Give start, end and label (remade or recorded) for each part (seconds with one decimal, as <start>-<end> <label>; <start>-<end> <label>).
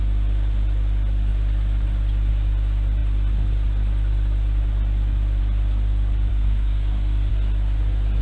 0.0-6.3 recorded; 6.3-7.3 remade; 7.3-8.2 recorded